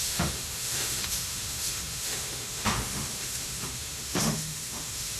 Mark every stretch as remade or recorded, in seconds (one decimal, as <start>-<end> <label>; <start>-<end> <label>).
0.0-5.2 remade